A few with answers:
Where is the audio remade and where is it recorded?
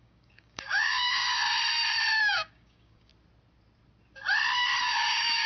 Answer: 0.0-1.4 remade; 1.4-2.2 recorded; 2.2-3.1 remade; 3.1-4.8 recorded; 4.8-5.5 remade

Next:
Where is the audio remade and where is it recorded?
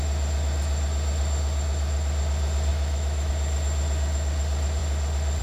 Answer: 0.0-2.7 recorded; 2.7-3.3 remade; 3.3-5.4 recorded